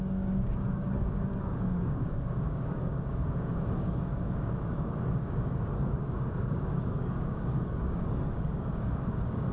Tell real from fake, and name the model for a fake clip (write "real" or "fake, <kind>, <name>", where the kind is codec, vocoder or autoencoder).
fake, codec, DAC